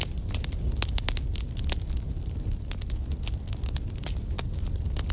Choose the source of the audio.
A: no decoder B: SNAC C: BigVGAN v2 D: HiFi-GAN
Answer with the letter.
A